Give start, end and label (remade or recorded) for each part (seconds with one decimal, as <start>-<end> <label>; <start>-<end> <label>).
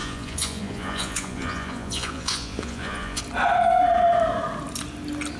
0.0-3.2 remade; 3.2-5.4 recorded